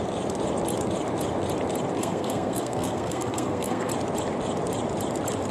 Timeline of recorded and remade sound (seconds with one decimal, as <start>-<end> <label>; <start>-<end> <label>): 0.0-2.0 recorded; 2.0-3.9 remade; 3.9-5.5 recorded